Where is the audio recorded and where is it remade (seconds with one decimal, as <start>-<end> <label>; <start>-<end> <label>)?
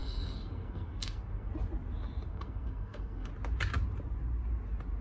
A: 0.0-1.5 remade; 1.5-2.3 recorded; 2.3-3.3 remade; 3.3-5.0 recorded